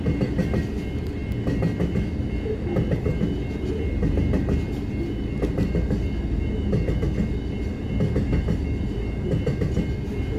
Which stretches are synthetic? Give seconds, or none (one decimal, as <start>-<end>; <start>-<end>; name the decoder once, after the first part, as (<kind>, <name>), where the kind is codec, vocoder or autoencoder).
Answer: none